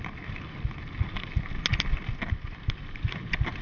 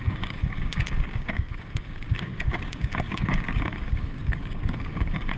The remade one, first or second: second